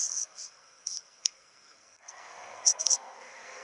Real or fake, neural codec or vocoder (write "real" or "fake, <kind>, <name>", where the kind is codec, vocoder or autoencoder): fake, codec, SNAC